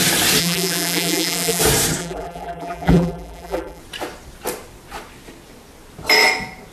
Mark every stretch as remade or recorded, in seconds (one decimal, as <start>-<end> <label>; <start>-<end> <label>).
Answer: 0.0-0.4 recorded; 0.4-1.6 remade; 1.6-2.0 recorded; 2.0-3.8 remade; 3.8-6.7 recorded